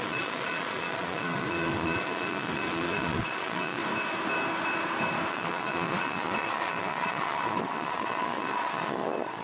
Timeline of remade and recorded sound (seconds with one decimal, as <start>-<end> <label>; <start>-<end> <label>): 0.0-3.8 remade; 3.8-5.3 recorded; 5.3-9.4 remade